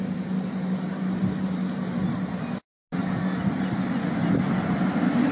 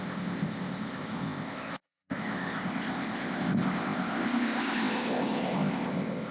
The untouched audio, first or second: first